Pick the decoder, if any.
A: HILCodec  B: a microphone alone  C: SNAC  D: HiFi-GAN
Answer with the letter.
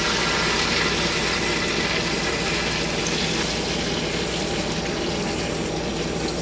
B